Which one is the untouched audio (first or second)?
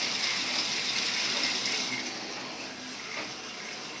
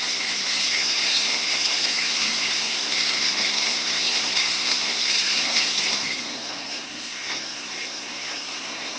first